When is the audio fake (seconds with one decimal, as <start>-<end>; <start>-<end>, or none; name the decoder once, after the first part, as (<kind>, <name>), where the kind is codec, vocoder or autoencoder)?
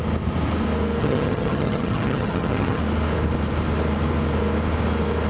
1.0-2.8 (vocoder, HiFi-GAN)